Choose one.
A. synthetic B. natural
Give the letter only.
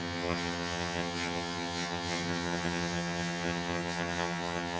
A